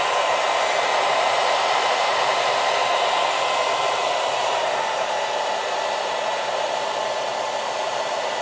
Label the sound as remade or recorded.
recorded